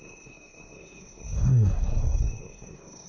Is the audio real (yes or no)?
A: no